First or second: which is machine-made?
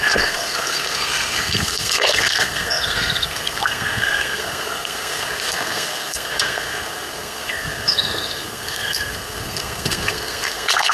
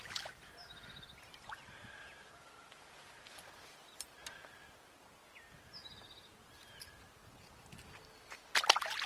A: first